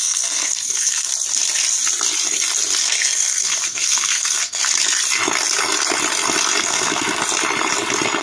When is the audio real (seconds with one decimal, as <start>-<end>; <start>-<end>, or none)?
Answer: 1.1-2.8; 4.6-6.6; 7.2-8.2